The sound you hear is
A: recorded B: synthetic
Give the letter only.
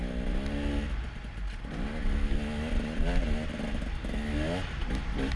A